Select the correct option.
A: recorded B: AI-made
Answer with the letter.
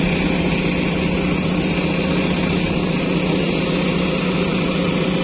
A